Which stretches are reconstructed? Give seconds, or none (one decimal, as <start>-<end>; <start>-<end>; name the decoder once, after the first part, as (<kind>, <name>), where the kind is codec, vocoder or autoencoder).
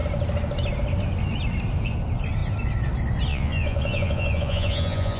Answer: 3.3-5.2 (vocoder, Vocos)